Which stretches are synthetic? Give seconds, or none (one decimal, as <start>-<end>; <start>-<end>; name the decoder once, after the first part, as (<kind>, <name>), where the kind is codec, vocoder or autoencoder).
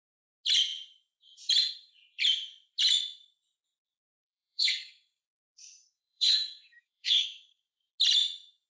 3.9-7.9 (codec, SNAC)